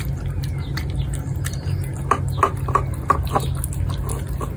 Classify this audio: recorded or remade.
recorded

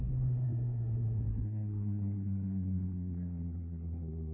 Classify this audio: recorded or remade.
remade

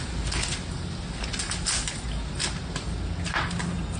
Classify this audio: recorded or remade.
recorded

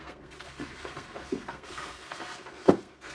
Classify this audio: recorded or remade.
remade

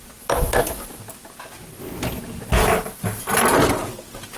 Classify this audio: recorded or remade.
recorded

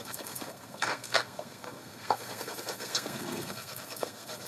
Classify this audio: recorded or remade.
remade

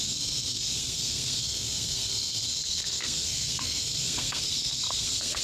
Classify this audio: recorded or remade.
remade